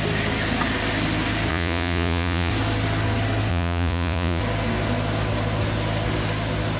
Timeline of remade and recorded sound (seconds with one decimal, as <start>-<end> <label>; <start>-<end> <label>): 0.0-1.5 recorded; 1.5-2.5 remade; 2.5-3.5 recorded; 3.5-4.4 remade; 4.4-6.8 recorded